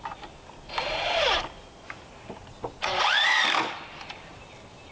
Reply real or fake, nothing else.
real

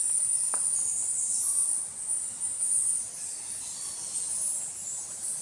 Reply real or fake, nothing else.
real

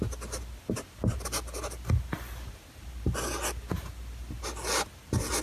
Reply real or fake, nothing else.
real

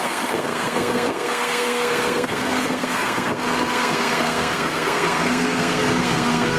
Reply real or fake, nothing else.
fake